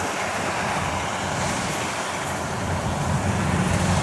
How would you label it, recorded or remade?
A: recorded